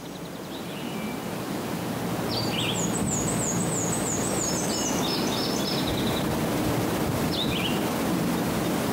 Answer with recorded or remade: recorded